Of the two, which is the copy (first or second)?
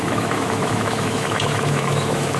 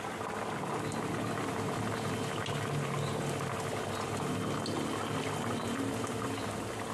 first